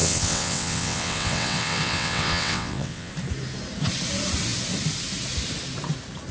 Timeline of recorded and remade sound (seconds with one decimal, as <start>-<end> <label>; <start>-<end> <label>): 0.0-3.1 remade; 3.1-6.3 recorded